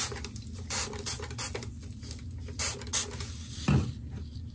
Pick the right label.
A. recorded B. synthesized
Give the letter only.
A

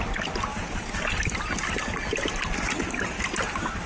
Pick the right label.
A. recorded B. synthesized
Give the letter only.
A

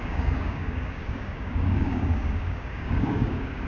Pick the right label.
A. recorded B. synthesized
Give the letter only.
B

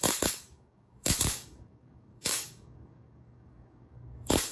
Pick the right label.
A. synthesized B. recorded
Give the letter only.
A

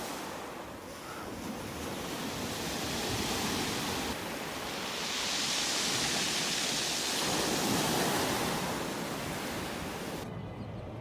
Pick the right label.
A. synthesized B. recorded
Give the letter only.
B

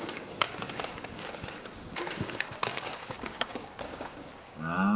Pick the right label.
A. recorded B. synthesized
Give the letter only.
B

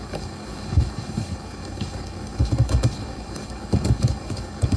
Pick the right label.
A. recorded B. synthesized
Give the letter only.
B